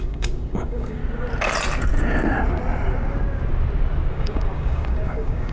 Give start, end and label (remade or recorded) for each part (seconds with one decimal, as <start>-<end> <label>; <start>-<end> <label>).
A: 0.0-1.0 remade; 1.0-4.1 recorded; 4.1-5.5 remade